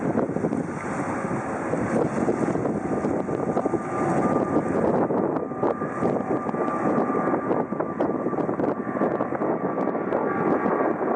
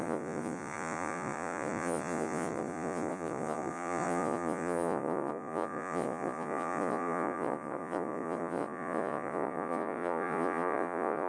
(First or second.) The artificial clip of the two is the second